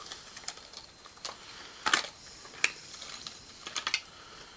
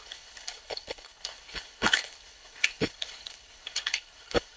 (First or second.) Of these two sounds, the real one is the first